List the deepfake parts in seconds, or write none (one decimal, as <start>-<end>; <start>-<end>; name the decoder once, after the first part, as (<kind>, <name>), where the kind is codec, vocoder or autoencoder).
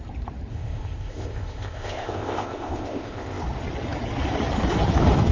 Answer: 0.5-3.4 (codec, ZipCodec)